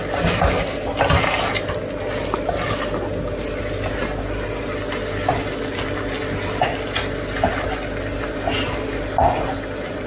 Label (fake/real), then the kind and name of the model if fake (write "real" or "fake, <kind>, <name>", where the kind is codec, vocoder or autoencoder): real